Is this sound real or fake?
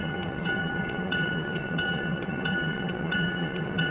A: fake